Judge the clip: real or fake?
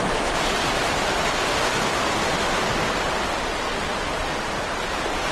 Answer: real